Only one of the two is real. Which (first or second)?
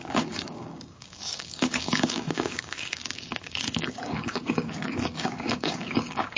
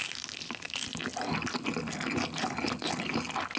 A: second